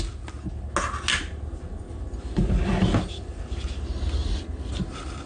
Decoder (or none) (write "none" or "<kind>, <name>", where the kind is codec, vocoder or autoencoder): none